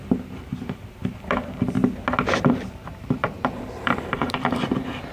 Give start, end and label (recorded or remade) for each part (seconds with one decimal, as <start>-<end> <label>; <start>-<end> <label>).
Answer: 0.0-1.8 remade; 1.8-2.5 recorded; 2.5-5.1 remade